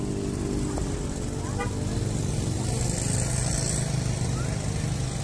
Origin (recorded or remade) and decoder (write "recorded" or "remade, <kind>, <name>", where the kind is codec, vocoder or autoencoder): recorded